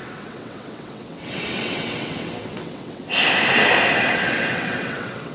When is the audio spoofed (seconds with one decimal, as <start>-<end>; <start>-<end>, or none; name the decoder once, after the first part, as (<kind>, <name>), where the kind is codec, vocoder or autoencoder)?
0.0-3.0 (vocoder, WaveNeXt); 4.1-5.3